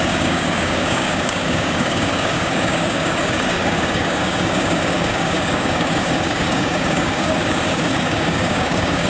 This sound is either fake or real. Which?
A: fake